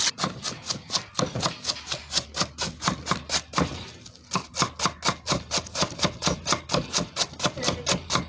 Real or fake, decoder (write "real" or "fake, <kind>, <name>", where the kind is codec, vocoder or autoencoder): real